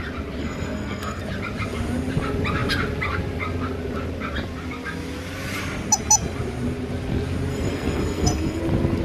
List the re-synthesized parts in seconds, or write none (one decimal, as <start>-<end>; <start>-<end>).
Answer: 0.4-1.2; 7.5-8.6